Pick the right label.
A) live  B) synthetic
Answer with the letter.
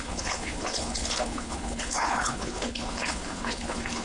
B